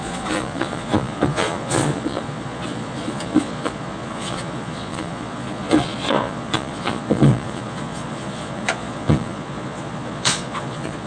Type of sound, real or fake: fake